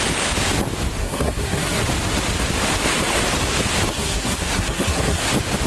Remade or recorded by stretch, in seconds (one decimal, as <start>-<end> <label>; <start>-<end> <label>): 0.0-1.0 recorded; 1.0-1.8 remade; 1.8-3.9 recorded; 3.9-5.3 remade; 5.3-5.7 recorded